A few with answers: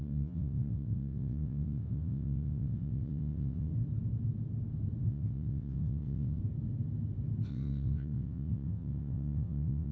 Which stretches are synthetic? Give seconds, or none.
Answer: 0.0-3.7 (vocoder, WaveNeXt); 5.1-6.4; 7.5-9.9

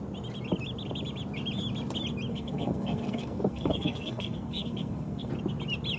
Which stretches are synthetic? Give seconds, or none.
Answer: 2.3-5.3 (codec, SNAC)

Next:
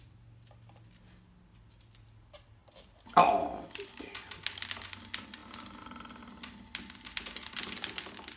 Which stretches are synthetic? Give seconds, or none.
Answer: none